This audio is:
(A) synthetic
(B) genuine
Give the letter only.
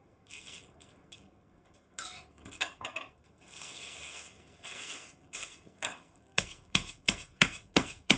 A